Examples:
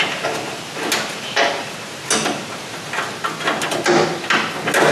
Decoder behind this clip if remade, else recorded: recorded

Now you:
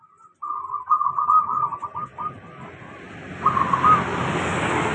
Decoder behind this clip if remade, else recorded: recorded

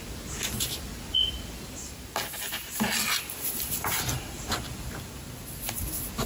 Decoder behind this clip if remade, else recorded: recorded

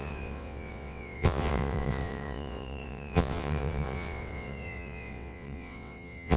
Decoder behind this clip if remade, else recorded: remade, vocoder, WaveNeXt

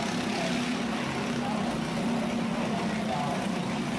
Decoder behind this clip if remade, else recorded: recorded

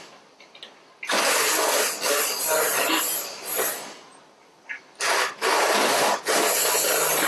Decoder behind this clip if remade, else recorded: recorded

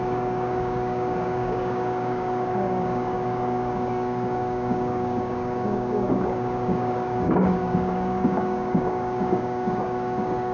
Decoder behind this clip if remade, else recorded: remade, codec, DAC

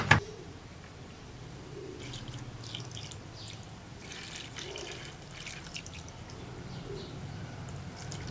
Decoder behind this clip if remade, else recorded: remade, vocoder, BigVGAN v2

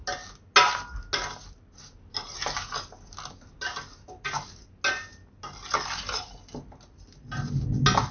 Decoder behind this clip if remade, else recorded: recorded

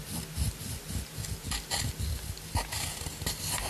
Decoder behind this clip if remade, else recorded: recorded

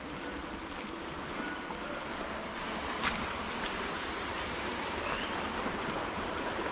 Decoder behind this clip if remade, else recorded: recorded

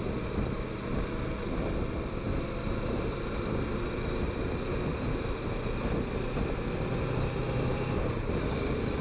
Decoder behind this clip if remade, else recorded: recorded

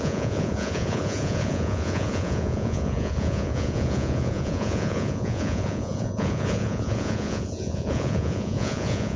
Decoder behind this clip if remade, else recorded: remade, vocoder, Vocos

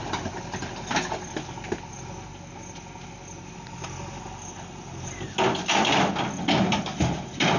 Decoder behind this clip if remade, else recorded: recorded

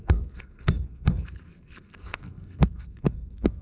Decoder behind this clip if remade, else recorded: remade, codec, SNAC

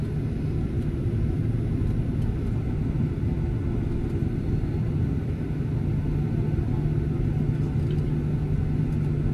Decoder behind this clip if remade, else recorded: recorded